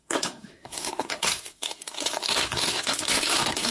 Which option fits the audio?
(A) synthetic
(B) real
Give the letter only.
A